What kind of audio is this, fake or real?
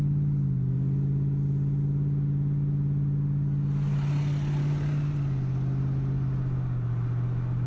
real